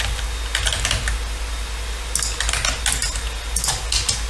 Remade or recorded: recorded